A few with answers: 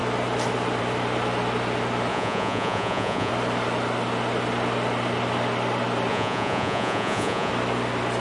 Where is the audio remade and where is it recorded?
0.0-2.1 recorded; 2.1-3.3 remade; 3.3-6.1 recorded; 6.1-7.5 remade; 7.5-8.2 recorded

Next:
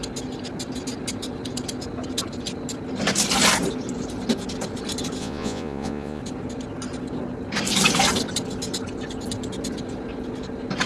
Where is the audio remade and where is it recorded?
0.0-5.2 recorded; 5.2-6.2 remade; 6.2-10.9 recorded

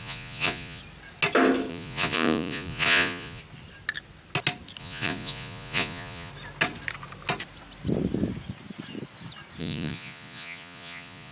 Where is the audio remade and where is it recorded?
0.0-0.8 remade; 0.8-1.7 recorded; 1.7-3.4 remade; 3.4-4.8 recorded; 4.8-6.3 remade; 6.3-9.6 recorded; 9.6-11.3 remade

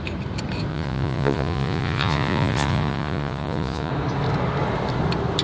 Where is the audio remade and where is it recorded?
0.0-0.7 recorded; 0.7-3.9 remade; 3.9-5.4 recorded

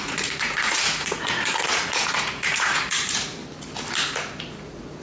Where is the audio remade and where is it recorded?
0.0-3.4 remade; 3.4-4.4 recorded; 4.4-5.0 remade

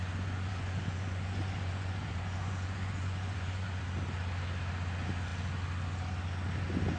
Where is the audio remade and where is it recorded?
0.0-3.8 remade; 3.8-7.0 recorded

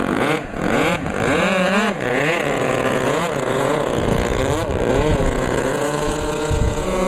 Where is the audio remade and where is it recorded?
0.0-4.4 remade; 4.4-4.9 recorded; 4.9-7.1 remade

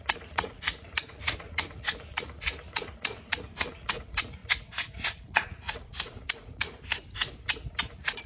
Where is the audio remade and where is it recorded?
0.0-6.9 remade; 6.9-7.8 recorded; 7.8-8.3 remade